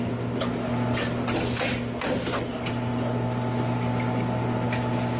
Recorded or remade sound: recorded